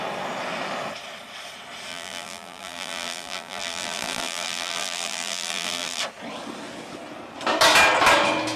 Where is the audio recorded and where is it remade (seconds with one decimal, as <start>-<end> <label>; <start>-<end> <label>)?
0.0-1.9 recorded; 1.9-6.0 remade; 6.0-8.6 recorded